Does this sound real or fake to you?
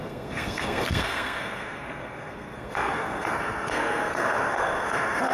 fake